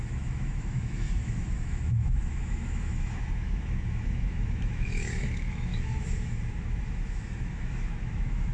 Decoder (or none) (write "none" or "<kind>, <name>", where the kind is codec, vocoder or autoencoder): autoencoder, DAC-VAE